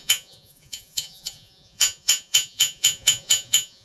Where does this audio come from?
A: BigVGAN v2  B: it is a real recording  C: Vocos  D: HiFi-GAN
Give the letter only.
C